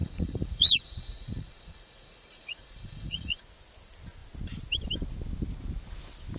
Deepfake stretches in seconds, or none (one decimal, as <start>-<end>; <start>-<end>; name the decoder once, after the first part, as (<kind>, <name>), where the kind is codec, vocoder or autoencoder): 0.0-3.4 (vocoder, Vocos)